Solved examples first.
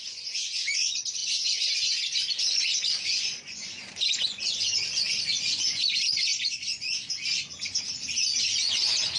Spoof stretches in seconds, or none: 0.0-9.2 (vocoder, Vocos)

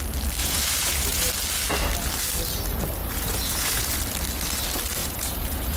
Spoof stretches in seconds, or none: 0.4-1.3 (vocoder, Vocos); 3.0-4.0; 5.0-5.8

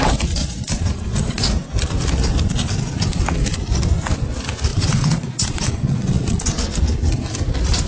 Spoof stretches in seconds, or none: 0.4-1.4 (vocoder, Vocos); 4.7-6.4

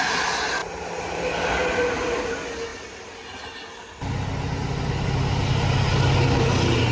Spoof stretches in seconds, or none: none